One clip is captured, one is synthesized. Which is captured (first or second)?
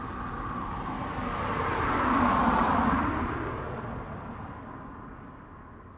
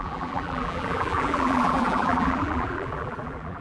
first